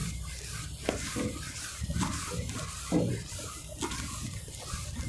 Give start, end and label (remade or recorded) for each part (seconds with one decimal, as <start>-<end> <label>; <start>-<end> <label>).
0.0-5.1 recorded